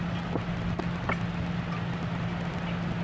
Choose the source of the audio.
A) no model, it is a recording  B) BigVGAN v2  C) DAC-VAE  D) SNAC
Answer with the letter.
A